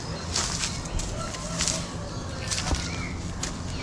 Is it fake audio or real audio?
real